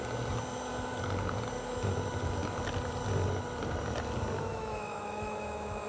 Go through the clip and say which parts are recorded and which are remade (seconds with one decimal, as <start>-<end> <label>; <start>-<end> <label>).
0.0-4.5 recorded; 4.5-5.9 remade